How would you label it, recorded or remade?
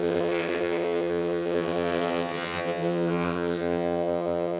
remade